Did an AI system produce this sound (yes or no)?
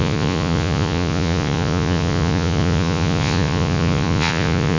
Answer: yes